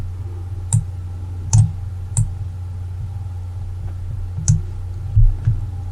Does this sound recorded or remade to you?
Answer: recorded